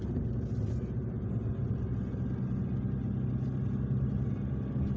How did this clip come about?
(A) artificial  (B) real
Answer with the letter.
B